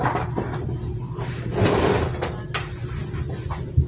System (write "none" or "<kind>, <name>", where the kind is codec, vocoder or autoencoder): none